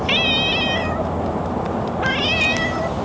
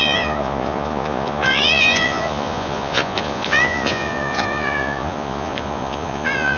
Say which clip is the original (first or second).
first